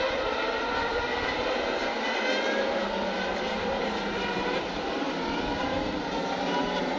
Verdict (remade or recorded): remade